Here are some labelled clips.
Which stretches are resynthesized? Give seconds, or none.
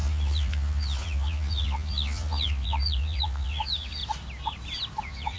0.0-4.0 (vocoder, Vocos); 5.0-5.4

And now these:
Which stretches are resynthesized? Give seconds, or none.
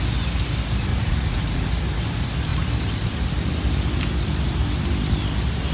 0.9-1.7 (vocoder, Vocos)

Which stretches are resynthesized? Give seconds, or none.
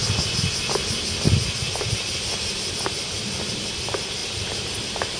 none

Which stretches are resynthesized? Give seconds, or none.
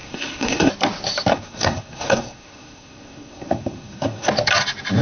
0.0-0.7 (codec, SNAC); 1.3-4.3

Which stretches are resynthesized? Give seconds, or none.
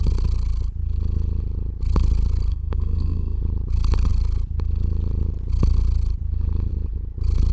2.5-3.4 (codec, SNAC)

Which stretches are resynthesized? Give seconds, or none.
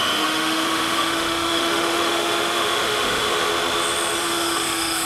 0.0-3.5 (autoencoder, DAC-VAE); 4.2-5.1